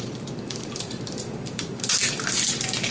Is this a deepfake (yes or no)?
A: yes